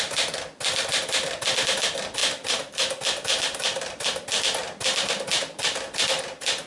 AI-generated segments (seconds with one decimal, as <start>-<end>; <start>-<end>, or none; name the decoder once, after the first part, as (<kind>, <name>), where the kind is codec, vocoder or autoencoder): none